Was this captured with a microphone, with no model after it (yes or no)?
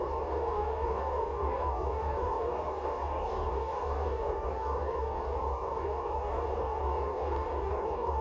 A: no